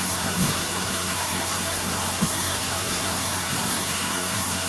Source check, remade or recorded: remade